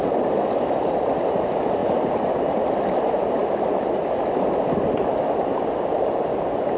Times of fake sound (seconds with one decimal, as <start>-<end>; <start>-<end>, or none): 1.8-2.6